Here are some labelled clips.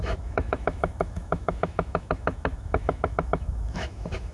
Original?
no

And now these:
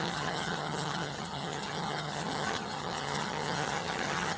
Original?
no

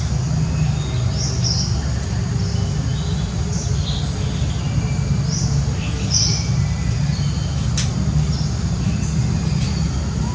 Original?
yes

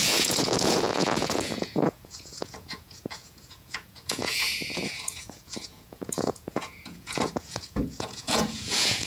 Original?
no